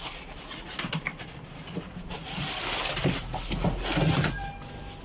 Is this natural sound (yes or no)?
yes